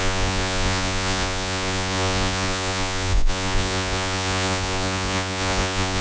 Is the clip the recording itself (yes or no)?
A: no